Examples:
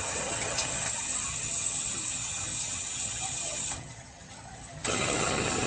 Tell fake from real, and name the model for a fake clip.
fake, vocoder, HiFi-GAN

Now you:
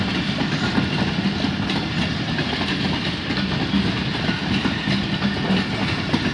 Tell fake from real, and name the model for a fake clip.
real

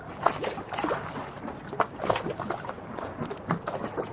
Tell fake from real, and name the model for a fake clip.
real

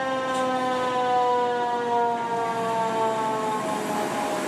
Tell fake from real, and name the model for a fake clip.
real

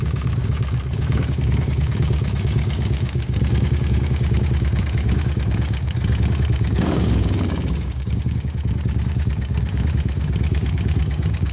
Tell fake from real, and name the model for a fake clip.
fake, codec, DAC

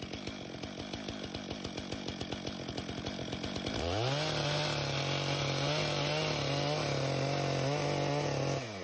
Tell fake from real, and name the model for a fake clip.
real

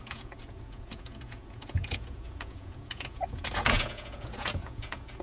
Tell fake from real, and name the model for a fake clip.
fake, vocoder, Vocos